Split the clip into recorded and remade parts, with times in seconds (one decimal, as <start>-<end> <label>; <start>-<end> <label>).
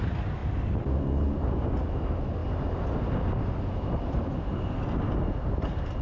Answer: 0.0-6.0 recorded